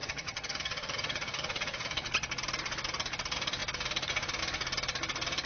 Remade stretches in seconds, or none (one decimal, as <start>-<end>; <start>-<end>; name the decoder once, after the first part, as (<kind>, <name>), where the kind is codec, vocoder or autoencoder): 0.0-2.1 (vocoder, HiFi-GAN)